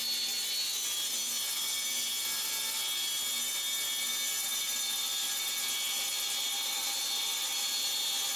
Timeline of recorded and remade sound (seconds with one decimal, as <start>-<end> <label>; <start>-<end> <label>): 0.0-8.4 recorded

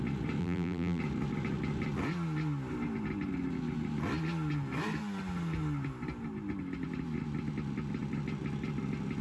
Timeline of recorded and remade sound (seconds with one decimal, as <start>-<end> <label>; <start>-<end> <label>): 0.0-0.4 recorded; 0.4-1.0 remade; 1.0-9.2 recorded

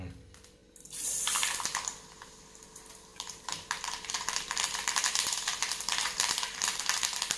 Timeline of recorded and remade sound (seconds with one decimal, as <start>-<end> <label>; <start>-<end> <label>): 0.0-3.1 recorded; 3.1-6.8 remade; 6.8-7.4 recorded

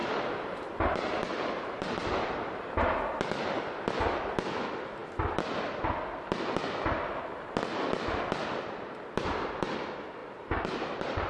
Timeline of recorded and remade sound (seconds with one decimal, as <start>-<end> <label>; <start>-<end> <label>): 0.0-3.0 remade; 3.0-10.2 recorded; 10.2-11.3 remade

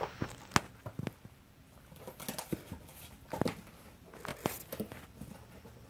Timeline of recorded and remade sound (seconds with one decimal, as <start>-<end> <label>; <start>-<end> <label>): 0.0-4.3 recorded; 4.3-5.3 remade; 5.3-5.9 recorded

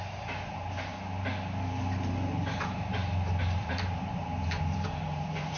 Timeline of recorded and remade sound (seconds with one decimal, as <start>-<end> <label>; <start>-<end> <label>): 0.0-0.9 remade; 0.9-3.4 recorded; 3.4-5.6 remade

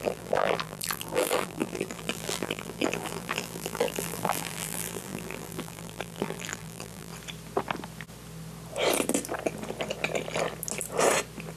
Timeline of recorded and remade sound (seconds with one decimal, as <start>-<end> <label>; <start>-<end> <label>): 0.0-7.1 remade; 7.1-11.6 recorded

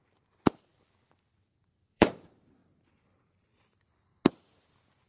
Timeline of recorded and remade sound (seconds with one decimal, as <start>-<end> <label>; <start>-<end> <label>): 0.0-0.7 recorded; 0.7-2.2 remade; 2.2-5.1 recorded